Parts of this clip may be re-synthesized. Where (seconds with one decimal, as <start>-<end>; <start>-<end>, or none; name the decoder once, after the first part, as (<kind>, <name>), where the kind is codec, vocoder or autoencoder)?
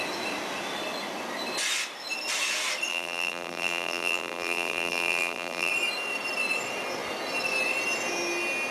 2.9-5.7 (vocoder, BigVGAN v2)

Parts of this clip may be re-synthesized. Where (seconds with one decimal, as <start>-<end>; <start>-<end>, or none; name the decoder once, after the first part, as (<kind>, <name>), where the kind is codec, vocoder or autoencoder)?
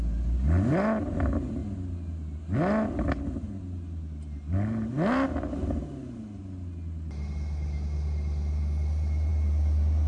none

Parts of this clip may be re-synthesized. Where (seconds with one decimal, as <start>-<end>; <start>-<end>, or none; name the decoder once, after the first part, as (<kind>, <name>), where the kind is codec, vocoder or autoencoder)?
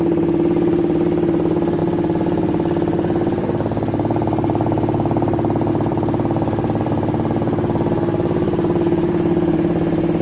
0.0-10.2 (vocoder, BigVGAN v2)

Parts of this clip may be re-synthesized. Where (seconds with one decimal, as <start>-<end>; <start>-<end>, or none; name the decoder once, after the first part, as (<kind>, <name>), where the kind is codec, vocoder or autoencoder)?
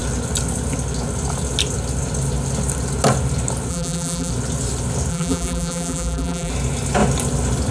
3.7-4.3 (vocoder, BigVGAN v2); 5.1-6.5